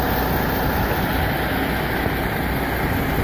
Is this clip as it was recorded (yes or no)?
yes